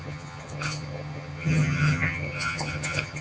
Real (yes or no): no